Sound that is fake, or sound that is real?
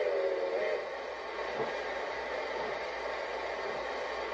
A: real